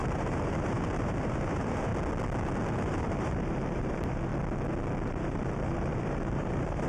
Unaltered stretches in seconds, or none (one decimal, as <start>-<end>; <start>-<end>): 1.9-2.9; 4.3-5.1